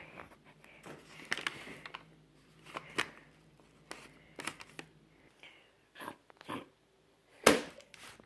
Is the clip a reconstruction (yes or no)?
no